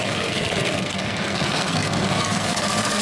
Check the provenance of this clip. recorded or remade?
remade